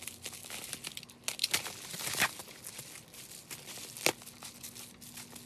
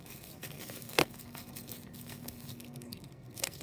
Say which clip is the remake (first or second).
second